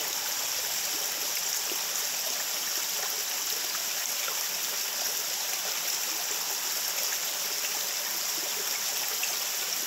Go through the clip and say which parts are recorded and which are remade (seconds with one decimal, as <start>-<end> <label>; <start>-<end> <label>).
0.0-9.9 recorded